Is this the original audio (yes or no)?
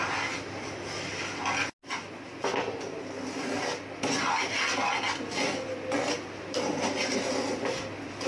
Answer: yes